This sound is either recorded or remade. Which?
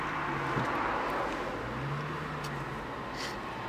recorded